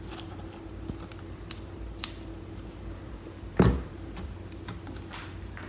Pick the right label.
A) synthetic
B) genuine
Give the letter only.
B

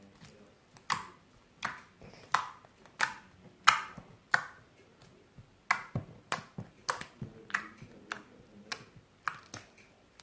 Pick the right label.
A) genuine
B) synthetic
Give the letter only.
A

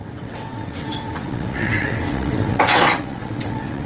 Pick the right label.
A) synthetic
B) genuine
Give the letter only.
A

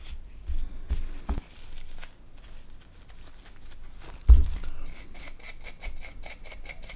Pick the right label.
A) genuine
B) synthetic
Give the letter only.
A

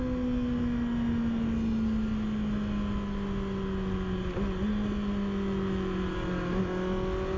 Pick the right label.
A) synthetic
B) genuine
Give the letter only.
B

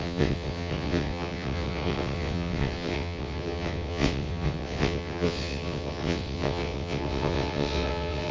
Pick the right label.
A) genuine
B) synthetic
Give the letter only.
B